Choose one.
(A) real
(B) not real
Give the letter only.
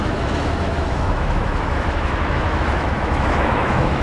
B